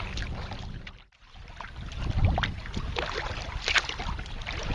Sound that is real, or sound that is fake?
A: real